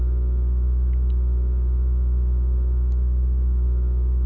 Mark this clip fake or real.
real